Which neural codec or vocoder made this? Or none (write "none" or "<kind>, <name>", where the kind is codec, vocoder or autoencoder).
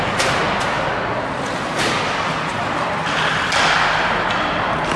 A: none